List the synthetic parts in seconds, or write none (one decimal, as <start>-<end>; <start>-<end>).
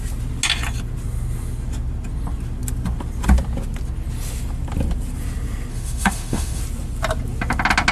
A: 5.7-6.6